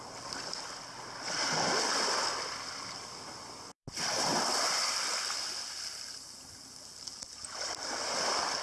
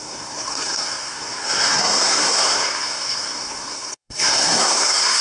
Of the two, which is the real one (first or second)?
first